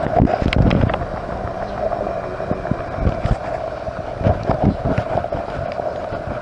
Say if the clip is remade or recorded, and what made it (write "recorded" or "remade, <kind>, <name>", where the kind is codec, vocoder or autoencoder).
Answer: recorded